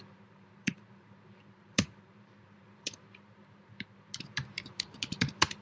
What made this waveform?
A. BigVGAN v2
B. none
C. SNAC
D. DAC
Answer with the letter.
A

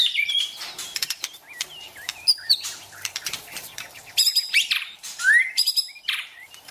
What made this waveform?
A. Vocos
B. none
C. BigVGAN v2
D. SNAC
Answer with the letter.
C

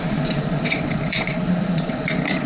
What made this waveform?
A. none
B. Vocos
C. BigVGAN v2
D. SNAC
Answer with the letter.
B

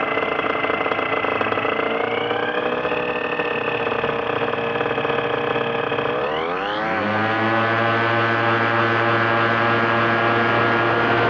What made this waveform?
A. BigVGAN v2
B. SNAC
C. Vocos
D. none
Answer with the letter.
D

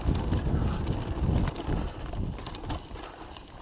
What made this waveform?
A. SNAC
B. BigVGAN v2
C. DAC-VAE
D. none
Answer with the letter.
D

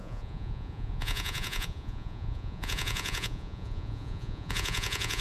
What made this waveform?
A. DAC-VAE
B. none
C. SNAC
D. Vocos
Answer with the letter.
D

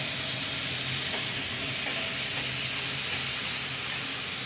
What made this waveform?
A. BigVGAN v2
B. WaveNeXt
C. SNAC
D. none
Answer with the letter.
D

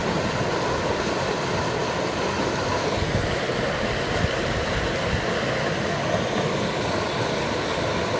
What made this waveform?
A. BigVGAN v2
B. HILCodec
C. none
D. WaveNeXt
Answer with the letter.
C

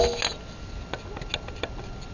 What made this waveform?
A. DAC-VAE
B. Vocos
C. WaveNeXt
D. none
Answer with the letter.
D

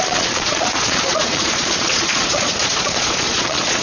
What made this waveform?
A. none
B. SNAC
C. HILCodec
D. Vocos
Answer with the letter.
D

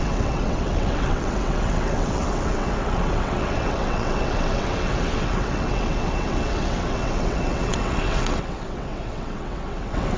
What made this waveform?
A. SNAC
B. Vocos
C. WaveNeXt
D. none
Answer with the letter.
C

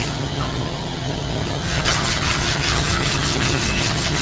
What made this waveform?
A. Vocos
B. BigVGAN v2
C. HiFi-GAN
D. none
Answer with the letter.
C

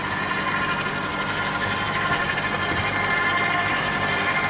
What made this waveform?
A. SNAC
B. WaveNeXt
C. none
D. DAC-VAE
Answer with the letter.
C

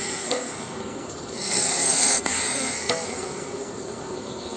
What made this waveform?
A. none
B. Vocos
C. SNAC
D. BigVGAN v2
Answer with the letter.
C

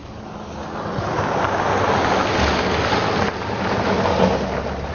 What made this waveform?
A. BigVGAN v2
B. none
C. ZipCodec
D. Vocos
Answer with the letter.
B